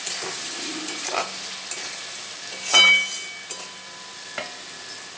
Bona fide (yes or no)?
yes